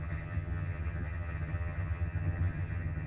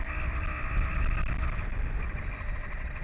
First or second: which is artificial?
first